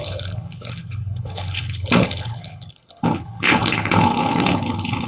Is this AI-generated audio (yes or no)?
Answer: yes